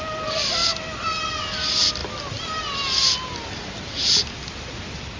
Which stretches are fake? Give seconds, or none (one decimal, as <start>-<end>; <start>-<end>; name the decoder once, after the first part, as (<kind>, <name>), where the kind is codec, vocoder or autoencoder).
none